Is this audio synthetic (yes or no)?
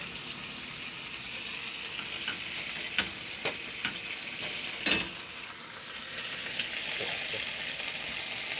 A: no